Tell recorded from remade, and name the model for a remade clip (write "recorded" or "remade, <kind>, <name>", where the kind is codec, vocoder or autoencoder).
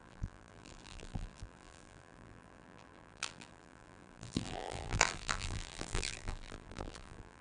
remade, vocoder, BigVGAN v2